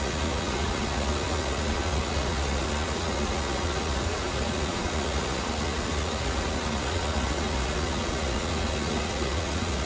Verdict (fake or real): fake